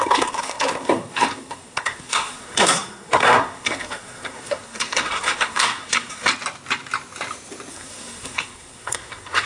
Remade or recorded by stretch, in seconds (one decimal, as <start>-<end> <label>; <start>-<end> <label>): 0.0-6.3 remade; 6.3-7.7 recorded; 7.7-9.5 remade